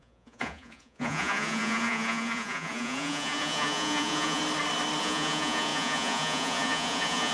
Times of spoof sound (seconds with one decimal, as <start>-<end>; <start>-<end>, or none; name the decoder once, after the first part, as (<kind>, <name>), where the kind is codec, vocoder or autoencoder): 0.0-4.4 (vocoder, Vocos); 5.0-7.3